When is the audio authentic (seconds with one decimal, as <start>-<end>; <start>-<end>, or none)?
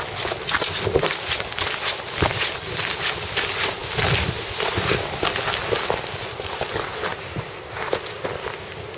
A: 0.0-9.0